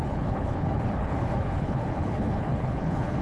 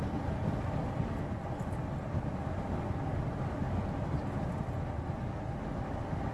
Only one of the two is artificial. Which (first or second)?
first